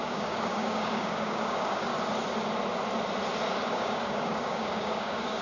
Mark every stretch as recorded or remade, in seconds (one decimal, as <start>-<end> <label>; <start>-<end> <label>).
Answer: 0.0-1.9 remade; 1.9-3.7 recorded; 3.7-5.4 remade